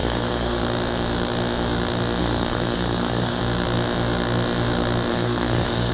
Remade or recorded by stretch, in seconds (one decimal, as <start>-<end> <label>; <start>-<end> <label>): 0.0-0.6 remade; 0.6-2.2 recorded; 2.2-3.4 remade; 3.4-5.1 recorded; 5.1-5.9 remade